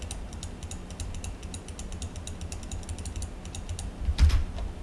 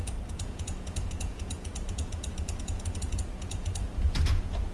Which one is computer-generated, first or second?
second